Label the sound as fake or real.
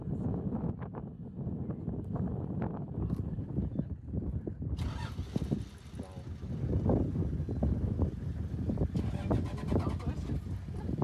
real